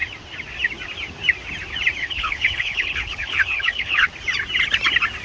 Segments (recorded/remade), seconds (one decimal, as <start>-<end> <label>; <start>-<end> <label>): 0.0-2.0 recorded; 2.0-4.1 remade; 4.1-5.2 recorded